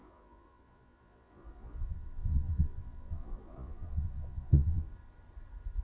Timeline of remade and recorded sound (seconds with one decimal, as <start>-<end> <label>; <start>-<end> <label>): 0.0-4.9 remade; 4.9-5.8 recorded